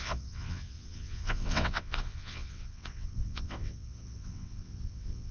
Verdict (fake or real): fake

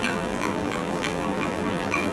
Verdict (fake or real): fake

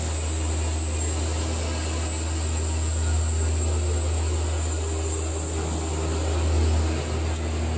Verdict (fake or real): real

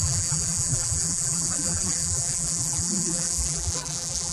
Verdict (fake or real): fake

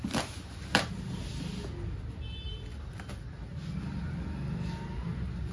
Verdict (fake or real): real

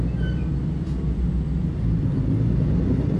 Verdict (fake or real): real